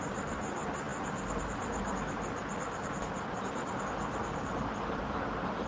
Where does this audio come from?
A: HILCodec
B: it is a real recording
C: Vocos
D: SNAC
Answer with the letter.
B